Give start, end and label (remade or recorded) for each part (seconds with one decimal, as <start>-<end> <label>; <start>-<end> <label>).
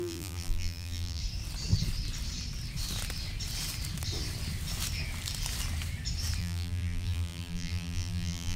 0.0-1.2 remade; 1.2-6.4 recorded; 6.4-8.6 remade